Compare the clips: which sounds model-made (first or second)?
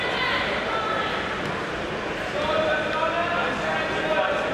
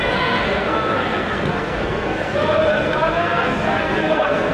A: second